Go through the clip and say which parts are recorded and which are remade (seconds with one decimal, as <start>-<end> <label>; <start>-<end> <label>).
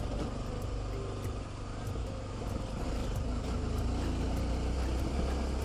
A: 0.0-2.0 recorded; 2.0-2.5 remade; 2.5-5.6 recorded